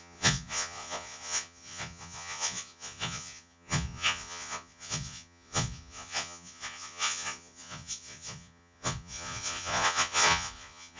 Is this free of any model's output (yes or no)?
no